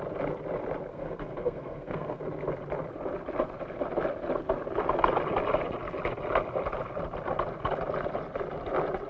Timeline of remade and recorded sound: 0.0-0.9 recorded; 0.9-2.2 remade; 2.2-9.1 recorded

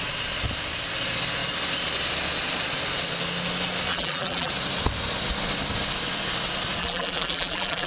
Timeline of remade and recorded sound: 0.0-3.9 recorded; 3.9-4.5 remade; 4.5-6.8 recorded; 6.8-7.9 remade